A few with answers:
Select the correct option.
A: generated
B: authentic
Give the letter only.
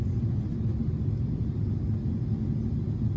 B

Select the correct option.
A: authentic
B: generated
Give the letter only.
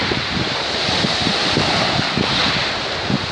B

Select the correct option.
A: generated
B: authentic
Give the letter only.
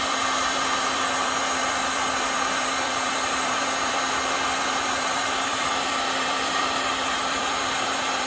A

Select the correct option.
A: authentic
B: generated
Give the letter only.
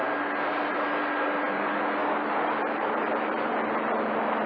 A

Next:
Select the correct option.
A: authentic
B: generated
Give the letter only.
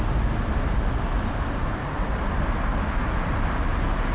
A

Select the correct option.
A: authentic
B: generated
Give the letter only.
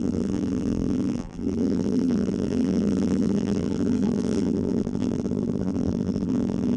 B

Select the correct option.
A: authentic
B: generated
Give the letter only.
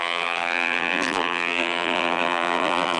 B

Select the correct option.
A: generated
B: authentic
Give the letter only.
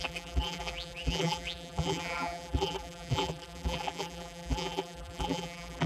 A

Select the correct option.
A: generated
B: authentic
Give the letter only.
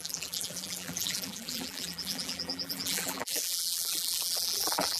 A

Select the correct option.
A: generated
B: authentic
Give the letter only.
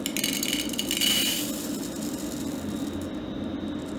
B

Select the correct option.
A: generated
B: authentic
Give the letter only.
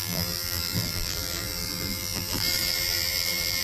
A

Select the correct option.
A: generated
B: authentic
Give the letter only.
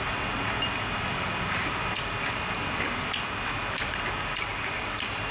B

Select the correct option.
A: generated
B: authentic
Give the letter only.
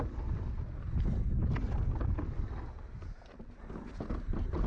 B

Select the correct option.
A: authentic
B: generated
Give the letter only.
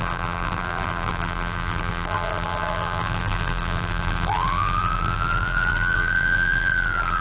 B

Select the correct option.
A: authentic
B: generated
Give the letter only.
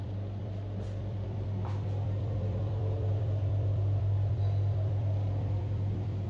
B